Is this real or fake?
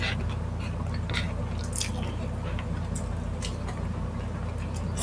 real